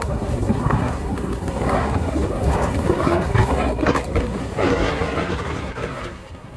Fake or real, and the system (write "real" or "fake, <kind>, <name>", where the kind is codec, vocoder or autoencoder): fake, codec, SNAC